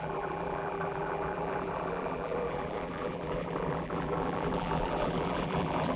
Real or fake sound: fake